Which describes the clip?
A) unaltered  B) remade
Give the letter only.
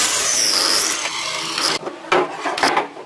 A